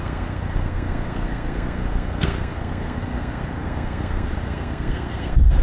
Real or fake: fake